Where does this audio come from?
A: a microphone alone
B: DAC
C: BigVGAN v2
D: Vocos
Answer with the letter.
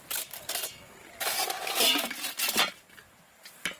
A